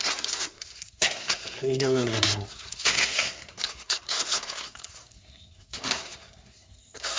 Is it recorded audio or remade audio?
remade